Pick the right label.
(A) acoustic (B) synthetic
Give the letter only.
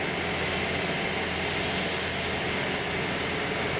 A